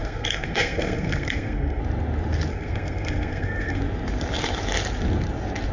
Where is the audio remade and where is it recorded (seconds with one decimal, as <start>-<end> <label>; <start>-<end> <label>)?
0.0-1.8 remade; 1.8-2.5 recorded; 2.5-3.8 remade; 3.8-5.7 recorded